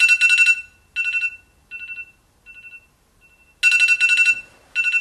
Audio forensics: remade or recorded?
recorded